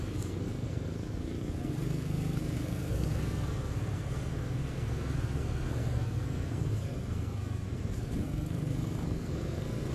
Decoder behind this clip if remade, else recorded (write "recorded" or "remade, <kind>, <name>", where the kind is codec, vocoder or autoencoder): remade, codec, SNAC